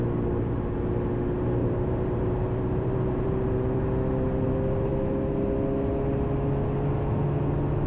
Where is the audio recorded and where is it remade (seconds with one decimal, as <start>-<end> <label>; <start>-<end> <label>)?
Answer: 0.0-1.6 recorded; 1.6-3.8 remade; 3.8-7.9 recorded